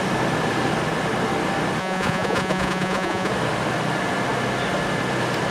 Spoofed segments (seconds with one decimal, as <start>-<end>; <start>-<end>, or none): 1.8-3.3